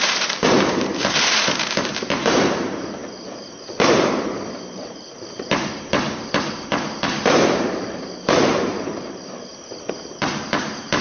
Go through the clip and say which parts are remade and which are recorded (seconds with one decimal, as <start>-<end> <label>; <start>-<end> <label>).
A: 0.0-9.5 remade; 9.5-10.0 recorded; 10.0-11.0 remade